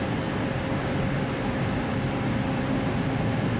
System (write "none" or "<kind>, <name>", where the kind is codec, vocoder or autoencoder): none